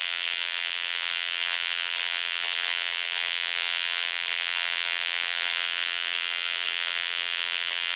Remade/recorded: remade